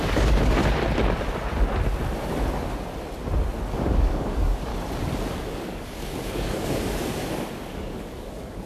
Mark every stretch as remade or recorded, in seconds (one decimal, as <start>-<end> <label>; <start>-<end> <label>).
0.0-0.6 remade; 0.6-3.7 recorded; 3.7-4.7 remade; 4.7-5.3 recorded; 5.3-8.7 remade